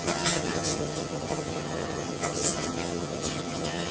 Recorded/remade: remade